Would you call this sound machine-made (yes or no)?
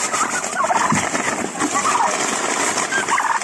no